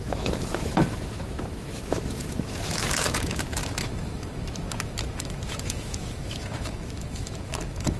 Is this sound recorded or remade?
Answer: remade